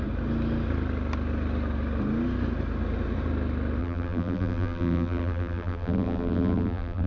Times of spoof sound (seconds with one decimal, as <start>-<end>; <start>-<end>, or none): 3.8-7.1